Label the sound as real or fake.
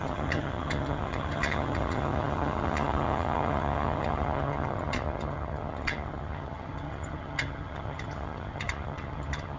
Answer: fake